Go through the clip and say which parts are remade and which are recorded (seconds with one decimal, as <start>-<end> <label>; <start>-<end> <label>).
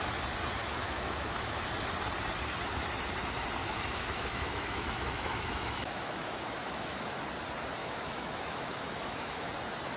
0.0-0.6 recorded; 0.6-1.6 remade; 1.6-3.6 recorded; 3.6-7.1 remade; 7.1-7.8 recorded; 7.8-9.5 remade; 9.5-10.0 recorded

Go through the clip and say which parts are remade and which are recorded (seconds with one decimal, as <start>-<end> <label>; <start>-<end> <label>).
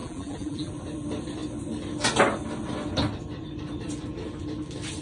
0.0-0.7 remade; 0.7-5.0 recorded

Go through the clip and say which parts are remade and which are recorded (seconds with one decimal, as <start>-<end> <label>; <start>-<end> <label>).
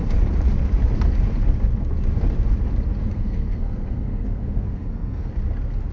0.0-3.0 recorded; 3.0-5.3 remade; 5.3-5.9 recorded